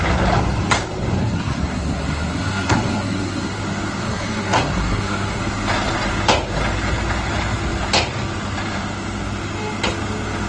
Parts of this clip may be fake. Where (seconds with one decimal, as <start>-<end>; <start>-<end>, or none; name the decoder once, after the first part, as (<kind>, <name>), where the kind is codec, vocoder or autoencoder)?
1.2-3.6 (codec, SNAC); 4.0-5.4